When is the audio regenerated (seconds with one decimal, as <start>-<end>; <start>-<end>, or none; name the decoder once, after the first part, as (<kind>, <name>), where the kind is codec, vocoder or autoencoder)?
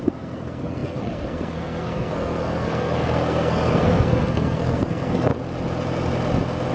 0.0-5.3 (codec, SNAC)